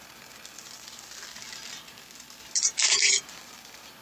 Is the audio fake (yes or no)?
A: no